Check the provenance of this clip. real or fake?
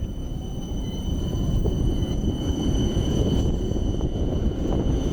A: fake